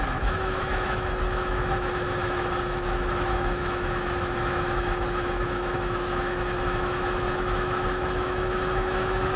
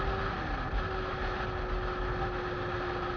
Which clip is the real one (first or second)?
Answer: second